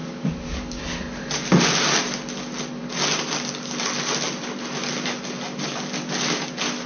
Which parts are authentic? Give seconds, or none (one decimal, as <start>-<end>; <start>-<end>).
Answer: 0.8-6.9